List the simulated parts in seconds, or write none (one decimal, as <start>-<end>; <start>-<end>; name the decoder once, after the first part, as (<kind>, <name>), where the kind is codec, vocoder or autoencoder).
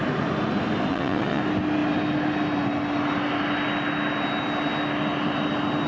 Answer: 0.9-1.4 (vocoder, Vocos)